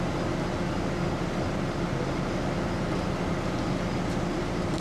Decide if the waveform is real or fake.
real